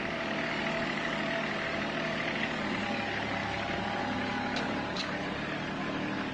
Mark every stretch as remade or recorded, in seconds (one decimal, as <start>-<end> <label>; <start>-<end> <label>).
0.0-6.3 remade